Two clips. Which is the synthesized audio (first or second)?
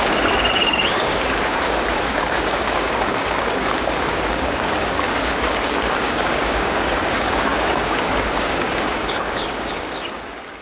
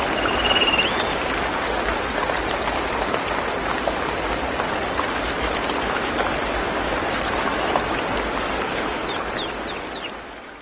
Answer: first